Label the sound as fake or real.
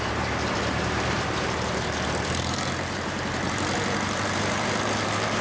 fake